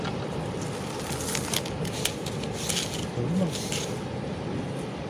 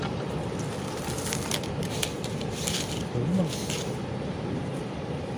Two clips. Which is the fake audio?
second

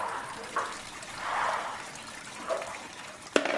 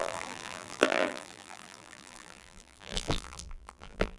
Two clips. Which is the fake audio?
second